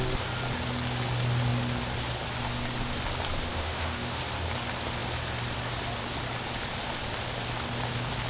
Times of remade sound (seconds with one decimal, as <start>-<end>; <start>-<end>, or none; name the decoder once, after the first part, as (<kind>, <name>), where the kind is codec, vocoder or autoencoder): 3.5-4.2 (autoencoder, DAC-VAE)